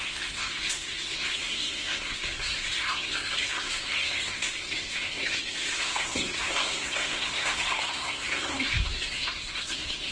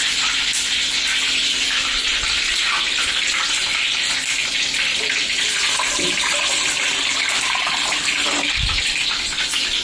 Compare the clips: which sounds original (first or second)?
second